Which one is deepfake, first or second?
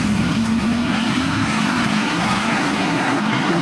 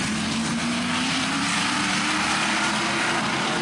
first